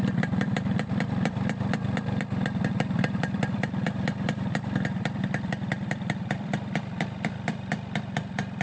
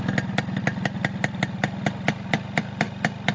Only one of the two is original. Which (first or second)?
second